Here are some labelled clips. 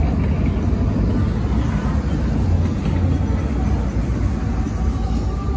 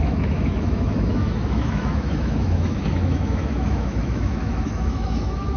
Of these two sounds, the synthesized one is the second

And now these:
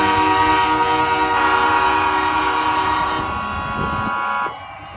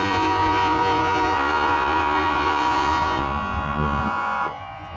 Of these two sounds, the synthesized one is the second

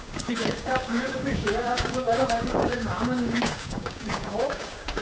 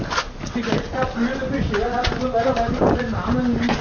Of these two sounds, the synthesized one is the first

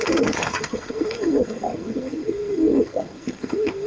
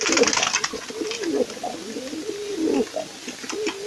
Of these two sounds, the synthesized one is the first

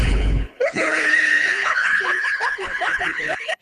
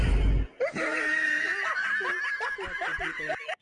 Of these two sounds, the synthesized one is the first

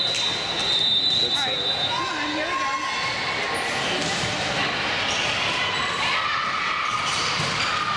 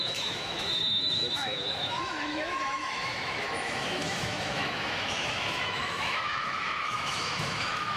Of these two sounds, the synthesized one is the second